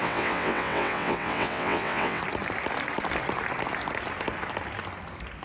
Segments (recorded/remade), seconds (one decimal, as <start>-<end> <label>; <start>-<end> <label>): 0.0-2.2 remade; 2.2-5.4 recorded